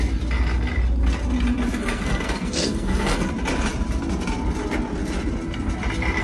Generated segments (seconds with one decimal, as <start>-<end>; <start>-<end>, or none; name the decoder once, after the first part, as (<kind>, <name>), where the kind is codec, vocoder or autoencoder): 1.8-3.3 (codec, SNAC)